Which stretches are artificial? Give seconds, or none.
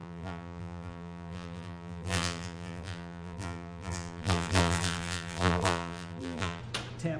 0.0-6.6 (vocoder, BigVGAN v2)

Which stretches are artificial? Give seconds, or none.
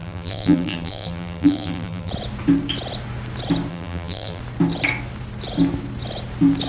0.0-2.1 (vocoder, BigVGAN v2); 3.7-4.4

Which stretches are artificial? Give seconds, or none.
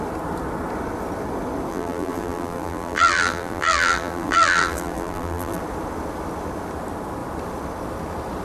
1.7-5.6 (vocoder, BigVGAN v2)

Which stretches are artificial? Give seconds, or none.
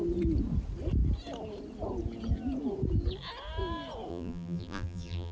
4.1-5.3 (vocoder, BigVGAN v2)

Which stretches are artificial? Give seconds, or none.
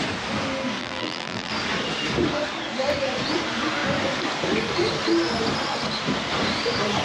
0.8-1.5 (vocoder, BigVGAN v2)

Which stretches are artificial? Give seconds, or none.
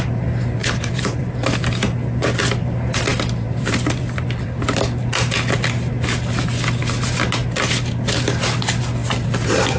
0.6-1.2 (vocoder, BigVGAN v2); 3.1-4.6; 9.0-9.8